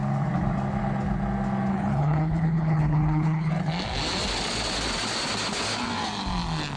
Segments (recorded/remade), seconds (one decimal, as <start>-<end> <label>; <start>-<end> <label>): 0.0-1.7 recorded; 1.7-3.5 remade; 3.5-6.8 recorded